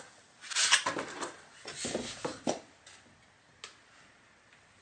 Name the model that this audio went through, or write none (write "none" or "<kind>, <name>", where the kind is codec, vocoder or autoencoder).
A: none